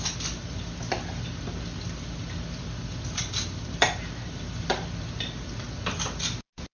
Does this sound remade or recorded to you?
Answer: recorded